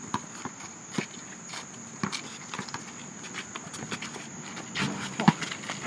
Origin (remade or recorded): recorded